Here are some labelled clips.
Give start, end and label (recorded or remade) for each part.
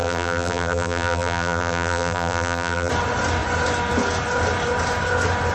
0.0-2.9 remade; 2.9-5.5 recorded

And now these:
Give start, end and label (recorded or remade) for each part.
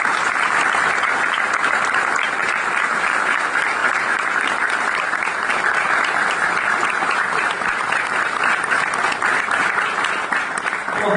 0.0-2.4 recorded; 2.4-3.2 remade; 3.2-3.8 recorded; 3.8-8.0 remade; 8.0-11.2 recorded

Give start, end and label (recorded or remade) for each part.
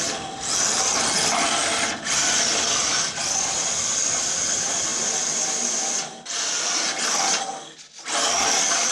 0.0-8.9 recorded